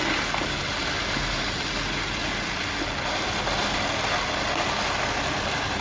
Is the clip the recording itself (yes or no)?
yes